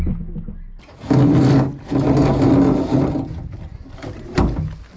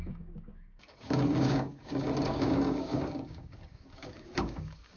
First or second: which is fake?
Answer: second